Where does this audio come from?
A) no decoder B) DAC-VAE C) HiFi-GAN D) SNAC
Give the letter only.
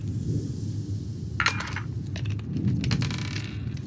A